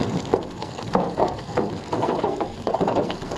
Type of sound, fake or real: fake